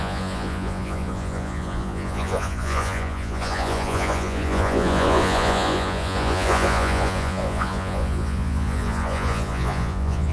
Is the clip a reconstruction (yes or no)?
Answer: yes